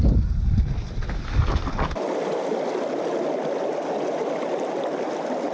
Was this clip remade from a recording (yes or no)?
no